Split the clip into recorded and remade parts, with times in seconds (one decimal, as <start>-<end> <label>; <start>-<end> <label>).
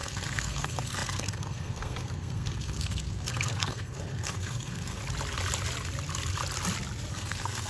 0.0-5.0 remade; 5.0-7.1 recorded; 7.1-7.7 remade